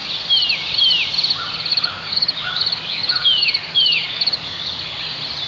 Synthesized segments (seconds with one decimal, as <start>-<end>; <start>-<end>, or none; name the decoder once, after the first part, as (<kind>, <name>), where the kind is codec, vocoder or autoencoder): 1.7-5.0 (codec, DAC)